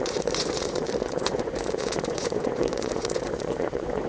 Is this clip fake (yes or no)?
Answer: yes